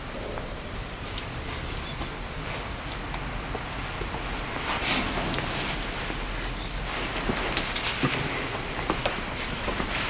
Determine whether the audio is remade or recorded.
recorded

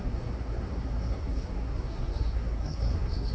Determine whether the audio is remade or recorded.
remade